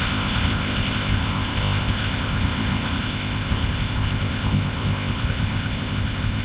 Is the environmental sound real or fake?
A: fake